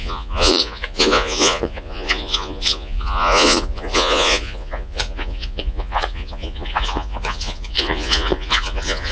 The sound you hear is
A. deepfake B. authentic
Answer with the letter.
A